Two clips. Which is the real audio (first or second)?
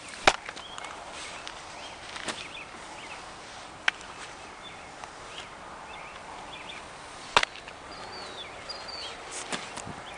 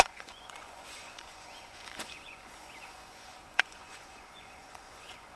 first